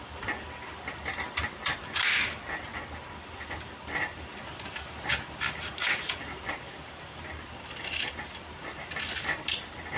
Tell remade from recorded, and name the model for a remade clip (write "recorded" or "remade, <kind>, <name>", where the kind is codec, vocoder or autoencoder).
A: remade, vocoder, BigVGAN v2